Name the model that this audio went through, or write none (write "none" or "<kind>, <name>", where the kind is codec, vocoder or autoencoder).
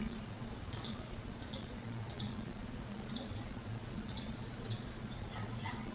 vocoder, Vocos